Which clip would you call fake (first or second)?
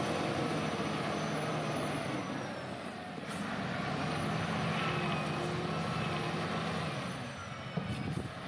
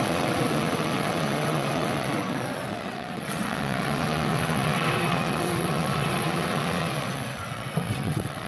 second